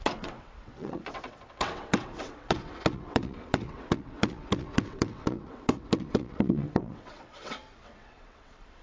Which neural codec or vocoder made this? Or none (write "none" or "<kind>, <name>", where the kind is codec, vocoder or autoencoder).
vocoder, WaveNeXt